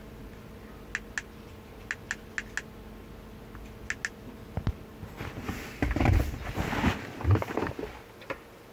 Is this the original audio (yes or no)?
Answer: yes